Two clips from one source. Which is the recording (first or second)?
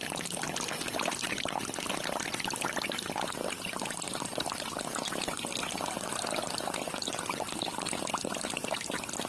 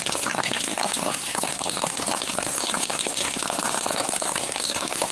first